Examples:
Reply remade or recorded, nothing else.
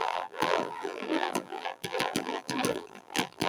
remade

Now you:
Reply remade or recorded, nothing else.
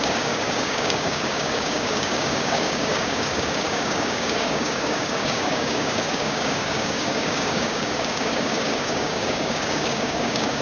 remade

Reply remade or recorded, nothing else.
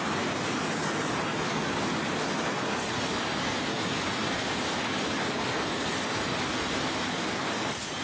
recorded